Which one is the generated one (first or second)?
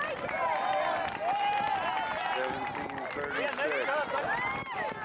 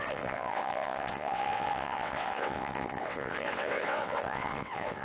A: second